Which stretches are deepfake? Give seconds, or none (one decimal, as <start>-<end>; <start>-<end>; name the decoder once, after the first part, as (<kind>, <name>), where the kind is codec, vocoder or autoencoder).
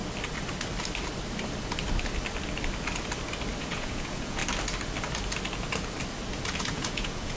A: 3.6-4.4 (vocoder, Vocos); 6.6-7.4